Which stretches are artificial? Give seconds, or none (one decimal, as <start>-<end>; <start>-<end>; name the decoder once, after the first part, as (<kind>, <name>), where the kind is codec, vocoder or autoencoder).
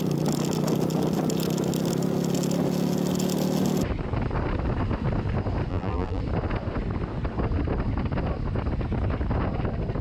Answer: 5.7-6.2 (vocoder, BigVGAN v2)